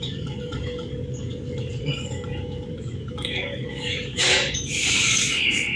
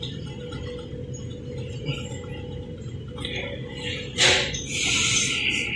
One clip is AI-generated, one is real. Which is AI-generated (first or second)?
first